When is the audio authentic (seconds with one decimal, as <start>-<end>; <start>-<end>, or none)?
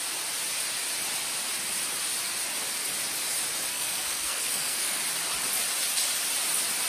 0.0-3.7; 5.0-6.9